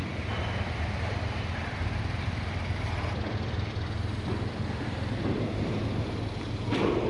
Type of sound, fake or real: fake